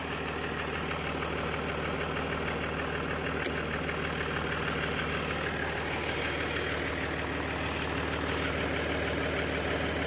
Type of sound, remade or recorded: recorded